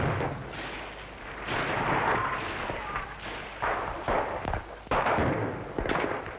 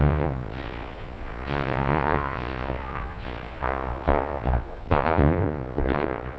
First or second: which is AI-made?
second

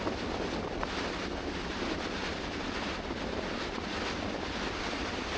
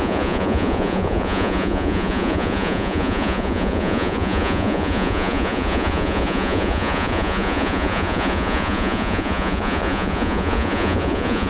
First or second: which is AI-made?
second